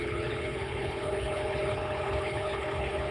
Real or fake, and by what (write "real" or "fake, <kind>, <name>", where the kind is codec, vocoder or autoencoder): fake, codec, HILCodec